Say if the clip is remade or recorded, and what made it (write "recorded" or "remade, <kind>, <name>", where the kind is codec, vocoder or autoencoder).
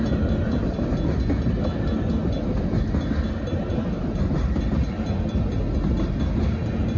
recorded